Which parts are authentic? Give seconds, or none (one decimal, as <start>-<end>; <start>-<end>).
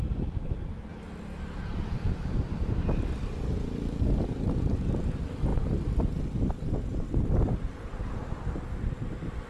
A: 0.0-9.5